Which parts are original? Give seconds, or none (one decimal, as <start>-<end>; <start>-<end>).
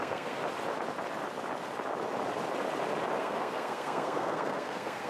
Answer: 0.4-3.2